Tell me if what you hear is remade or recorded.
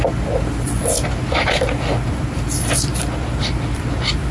remade